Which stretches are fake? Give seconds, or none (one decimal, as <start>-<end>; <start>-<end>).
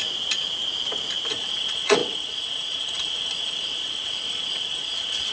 1.3-5.3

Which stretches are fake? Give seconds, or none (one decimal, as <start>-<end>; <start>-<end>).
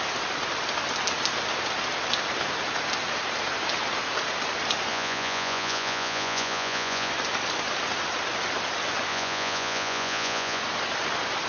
4.9-7.1; 9.1-10.6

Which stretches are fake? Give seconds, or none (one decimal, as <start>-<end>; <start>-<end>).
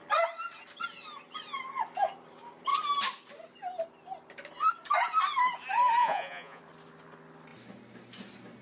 6.0-6.6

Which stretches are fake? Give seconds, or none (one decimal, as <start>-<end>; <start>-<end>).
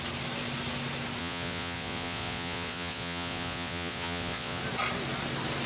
1.2-4.6